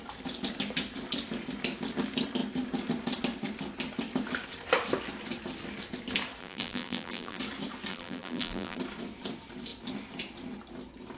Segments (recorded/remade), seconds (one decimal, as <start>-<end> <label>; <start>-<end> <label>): 0.0-6.4 recorded; 6.4-7.4 remade; 7.4-7.9 recorded; 7.9-8.8 remade; 8.8-11.2 recorded